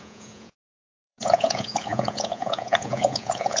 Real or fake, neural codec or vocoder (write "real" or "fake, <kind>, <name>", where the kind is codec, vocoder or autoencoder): fake, vocoder, Vocos